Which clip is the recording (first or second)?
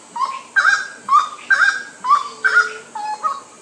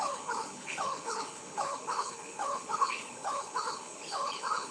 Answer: first